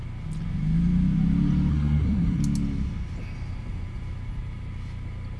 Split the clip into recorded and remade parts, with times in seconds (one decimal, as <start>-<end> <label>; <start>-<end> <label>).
0.0-1.7 recorded; 1.7-2.4 remade; 2.4-5.4 recorded